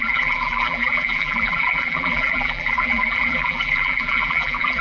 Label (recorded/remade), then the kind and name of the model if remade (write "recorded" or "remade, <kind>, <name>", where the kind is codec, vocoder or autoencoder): remade, vocoder, BigVGAN v2